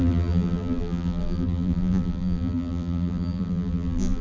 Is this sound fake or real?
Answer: fake